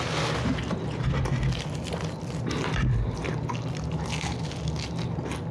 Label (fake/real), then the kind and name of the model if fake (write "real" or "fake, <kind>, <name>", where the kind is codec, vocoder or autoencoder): real